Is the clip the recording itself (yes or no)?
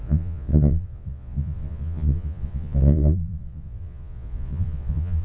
no